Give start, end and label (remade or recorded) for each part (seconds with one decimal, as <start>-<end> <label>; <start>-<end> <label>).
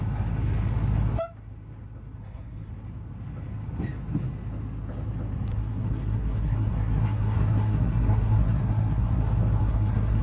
0.0-2.2 recorded; 2.2-2.7 remade; 2.7-5.5 recorded; 5.5-9.2 remade; 9.2-9.6 recorded; 9.6-10.2 remade